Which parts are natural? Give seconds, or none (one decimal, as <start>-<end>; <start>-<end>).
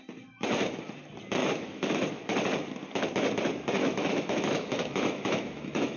0.0-1.4; 2.2-3.8